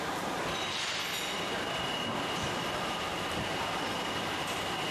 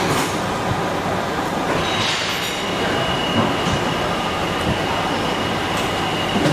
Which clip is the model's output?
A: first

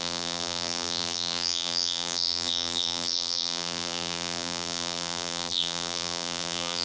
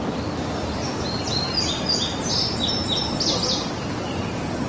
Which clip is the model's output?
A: first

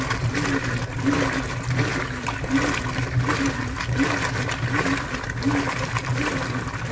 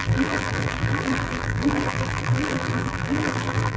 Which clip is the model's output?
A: second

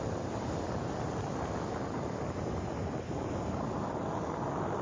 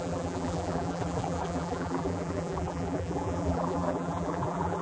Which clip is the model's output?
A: second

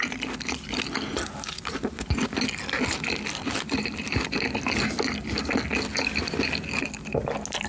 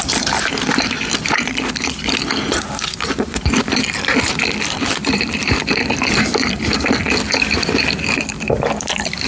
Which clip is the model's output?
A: second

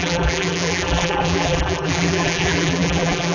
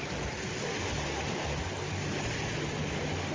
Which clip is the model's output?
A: first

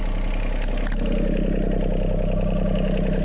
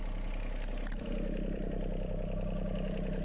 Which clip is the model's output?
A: second